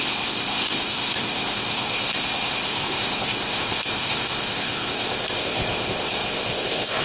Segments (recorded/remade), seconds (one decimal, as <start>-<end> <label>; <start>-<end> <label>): 0.0-7.0 remade